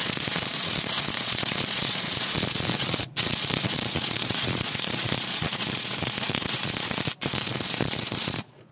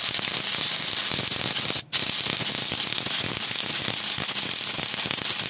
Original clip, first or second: second